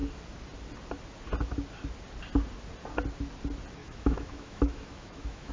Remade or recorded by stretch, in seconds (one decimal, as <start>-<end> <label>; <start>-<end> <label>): 0.0-3.8 recorded; 3.8-5.5 remade